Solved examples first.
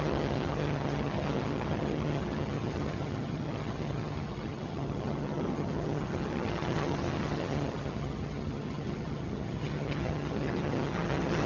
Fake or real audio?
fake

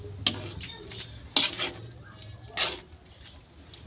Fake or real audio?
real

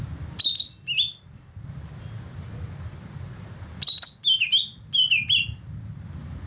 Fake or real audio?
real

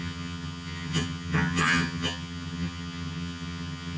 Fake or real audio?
fake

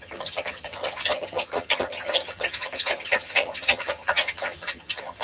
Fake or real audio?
fake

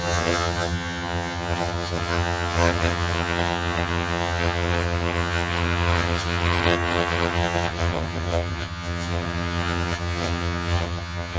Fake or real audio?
fake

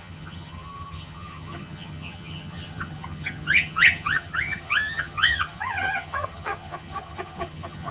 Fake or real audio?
fake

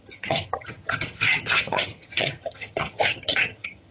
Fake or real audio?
fake